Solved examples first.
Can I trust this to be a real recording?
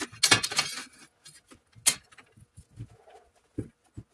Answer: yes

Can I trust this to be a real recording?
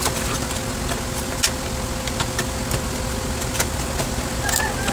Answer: yes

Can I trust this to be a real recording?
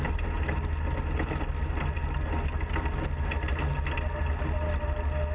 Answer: yes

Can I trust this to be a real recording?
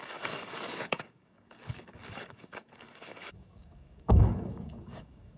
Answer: no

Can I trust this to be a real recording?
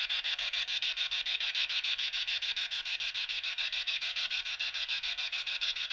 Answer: no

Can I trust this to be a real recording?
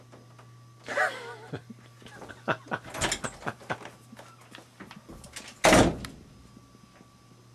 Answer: yes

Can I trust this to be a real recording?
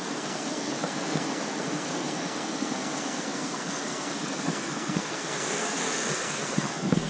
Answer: no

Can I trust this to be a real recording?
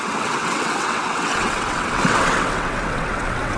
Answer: no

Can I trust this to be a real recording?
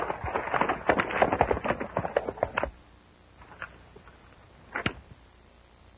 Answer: yes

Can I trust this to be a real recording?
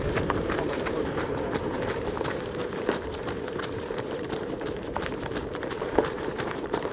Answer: no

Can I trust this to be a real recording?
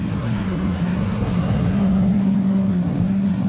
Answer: no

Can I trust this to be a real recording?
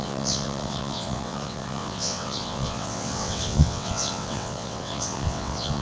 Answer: no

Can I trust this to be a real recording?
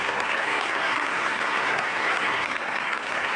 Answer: no